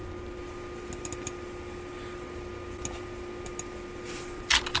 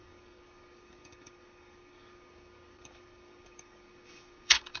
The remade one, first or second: second